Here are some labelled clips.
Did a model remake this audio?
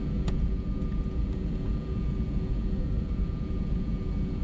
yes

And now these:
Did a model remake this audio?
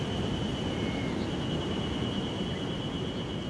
no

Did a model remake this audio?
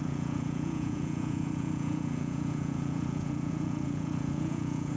yes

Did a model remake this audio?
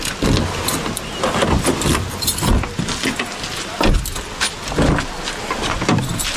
no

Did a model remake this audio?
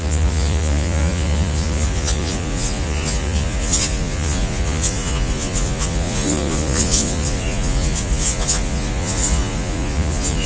yes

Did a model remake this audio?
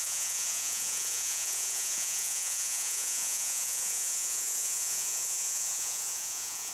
yes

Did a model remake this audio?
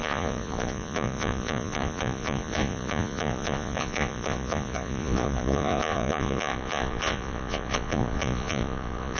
yes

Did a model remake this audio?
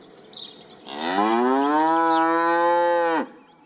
no